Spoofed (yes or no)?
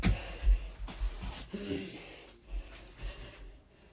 no